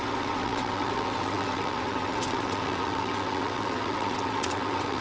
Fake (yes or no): yes